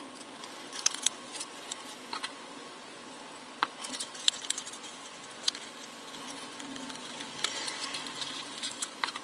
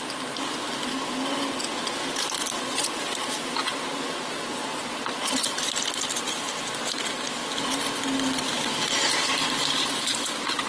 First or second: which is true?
second